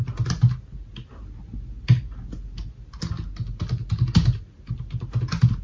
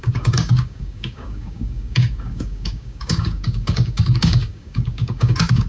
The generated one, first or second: second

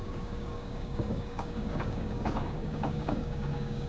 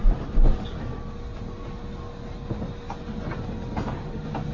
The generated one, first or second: first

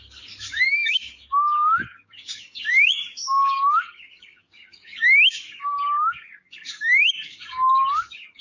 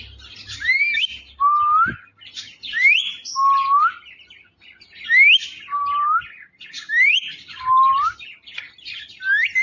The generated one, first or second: first